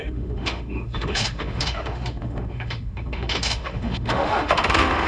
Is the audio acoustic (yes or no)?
no